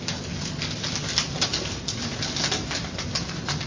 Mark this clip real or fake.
real